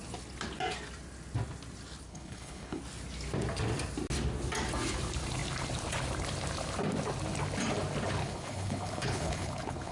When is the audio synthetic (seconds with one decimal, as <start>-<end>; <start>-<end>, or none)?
2.1-2.8; 8.2-9.9